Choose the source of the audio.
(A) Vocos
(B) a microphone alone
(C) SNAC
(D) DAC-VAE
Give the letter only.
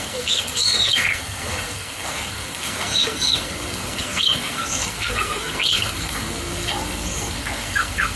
C